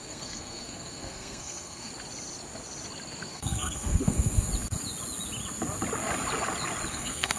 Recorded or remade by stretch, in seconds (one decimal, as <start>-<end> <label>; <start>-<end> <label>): 0.0-1.9 remade; 1.9-3.3 recorded; 3.3-4.5 remade; 4.5-6.9 recorded; 6.9-7.4 remade

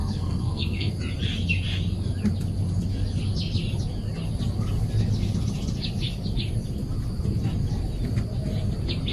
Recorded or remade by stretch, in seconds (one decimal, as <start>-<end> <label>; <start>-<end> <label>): 0.0-0.9 remade; 0.9-9.1 recorded

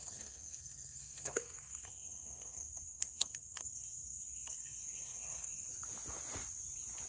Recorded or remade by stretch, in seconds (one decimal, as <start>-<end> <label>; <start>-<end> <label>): 0.0-5.7 remade; 5.7-7.1 recorded

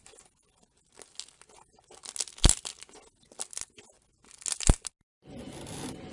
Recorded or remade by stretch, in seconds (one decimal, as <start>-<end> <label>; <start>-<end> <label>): 0.0-6.1 recorded

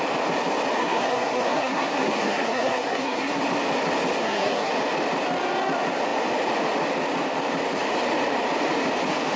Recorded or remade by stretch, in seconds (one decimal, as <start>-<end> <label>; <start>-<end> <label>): 0.0-0.8 recorded; 0.8-3.4 remade; 3.4-4.2 recorded; 4.2-4.7 remade; 4.7-9.4 recorded